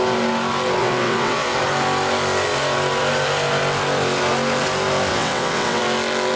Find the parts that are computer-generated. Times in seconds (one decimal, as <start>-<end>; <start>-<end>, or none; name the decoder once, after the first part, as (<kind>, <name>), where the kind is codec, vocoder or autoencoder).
0.8-1.6 (vocoder, WaveNeXt); 5.1-5.8